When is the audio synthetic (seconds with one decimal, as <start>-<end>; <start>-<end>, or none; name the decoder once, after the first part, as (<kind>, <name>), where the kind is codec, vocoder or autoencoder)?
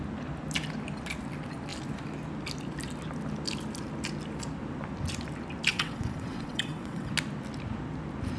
5.7-7.1 (vocoder, WaveNeXt)